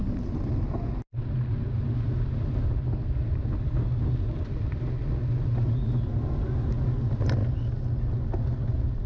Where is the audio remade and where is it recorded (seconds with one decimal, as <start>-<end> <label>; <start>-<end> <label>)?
0.0-9.1 recorded